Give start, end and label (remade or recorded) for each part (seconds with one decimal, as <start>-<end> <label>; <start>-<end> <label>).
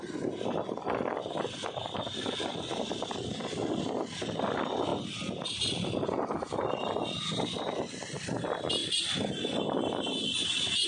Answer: 0.0-10.9 remade